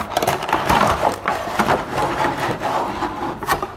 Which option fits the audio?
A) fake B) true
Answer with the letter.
A